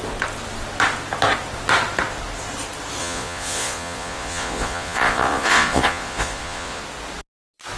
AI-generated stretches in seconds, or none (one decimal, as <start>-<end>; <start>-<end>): 3.0-6.8